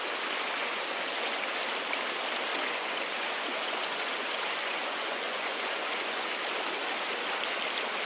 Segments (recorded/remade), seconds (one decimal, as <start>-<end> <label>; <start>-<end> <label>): 0.0-0.6 recorded; 0.6-1.4 remade; 1.4-2.5 recorded; 2.5-6.3 remade; 6.3-8.0 recorded